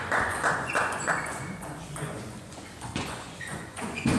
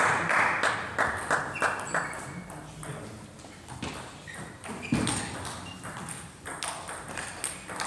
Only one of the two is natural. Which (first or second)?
second